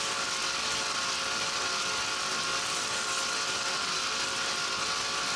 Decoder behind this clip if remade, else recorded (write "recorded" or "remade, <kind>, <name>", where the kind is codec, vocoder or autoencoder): recorded